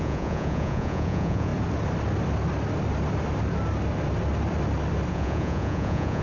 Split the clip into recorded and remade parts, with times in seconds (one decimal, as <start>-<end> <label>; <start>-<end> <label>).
0.0-1.5 remade; 1.5-5.1 recorded; 5.1-6.2 remade